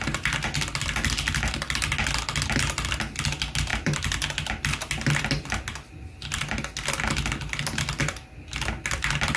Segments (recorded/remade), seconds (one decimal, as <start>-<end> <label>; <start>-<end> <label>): 0.0-3.7 recorded; 3.7-4.7 remade; 4.7-9.4 recorded

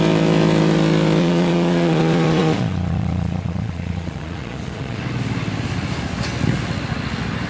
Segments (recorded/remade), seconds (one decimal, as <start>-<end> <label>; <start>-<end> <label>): 0.0-1.2 recorded; 1.2-5.0 remade; 5.0-7.5 recorded

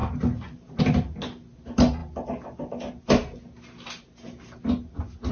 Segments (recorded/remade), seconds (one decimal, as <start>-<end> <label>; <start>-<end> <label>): 0.0-5.3 recorded

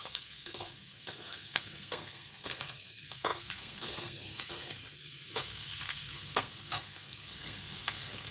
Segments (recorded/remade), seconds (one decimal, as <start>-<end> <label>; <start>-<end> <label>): 0.0-8.3 remade

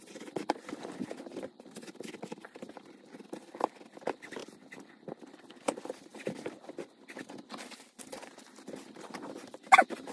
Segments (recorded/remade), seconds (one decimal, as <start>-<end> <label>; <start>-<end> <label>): 0.0-6.1 recorded; 6.1-8.2 remade; 8.2-10.1 recorded

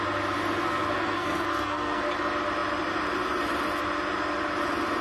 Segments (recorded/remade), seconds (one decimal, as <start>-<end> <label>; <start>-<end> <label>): 0.0-0.6 recorded; 0.6-2.0 remade; 2.0-5.0 recorded